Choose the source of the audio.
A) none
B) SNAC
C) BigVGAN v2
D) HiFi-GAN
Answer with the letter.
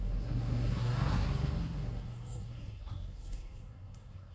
B